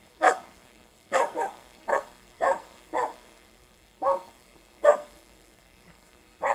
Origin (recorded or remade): remade